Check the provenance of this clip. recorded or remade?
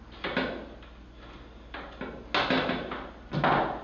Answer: recorded